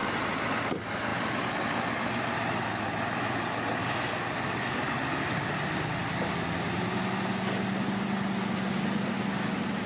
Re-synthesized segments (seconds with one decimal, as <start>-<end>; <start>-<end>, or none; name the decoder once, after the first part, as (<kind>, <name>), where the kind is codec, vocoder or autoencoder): none

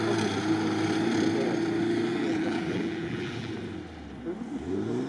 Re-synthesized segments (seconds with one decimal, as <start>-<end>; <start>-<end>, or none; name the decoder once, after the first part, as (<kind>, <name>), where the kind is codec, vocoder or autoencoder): 2.1-3.5 (vocoder, BigVGAN v2)